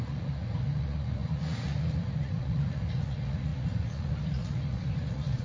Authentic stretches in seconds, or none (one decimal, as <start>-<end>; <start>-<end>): none